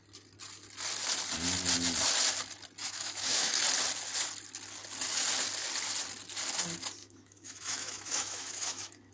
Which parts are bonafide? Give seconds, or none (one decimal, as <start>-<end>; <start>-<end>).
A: 0.0-2.8; 3.6-7.0